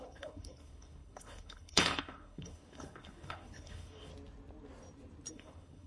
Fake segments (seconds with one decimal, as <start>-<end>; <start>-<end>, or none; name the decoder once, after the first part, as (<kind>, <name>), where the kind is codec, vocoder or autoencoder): 0.0-4.1 (codec, HILCodec); 5.3-5.9